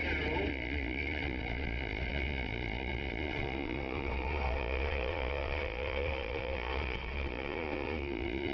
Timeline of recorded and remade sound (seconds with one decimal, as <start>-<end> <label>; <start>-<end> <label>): 0.0-0.5 recorded; 0.5-8.5 remade